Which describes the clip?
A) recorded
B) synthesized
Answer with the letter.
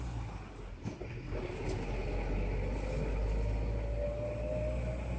A